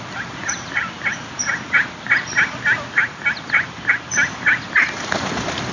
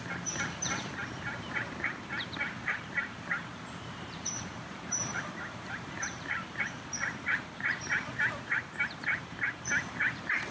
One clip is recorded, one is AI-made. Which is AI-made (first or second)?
second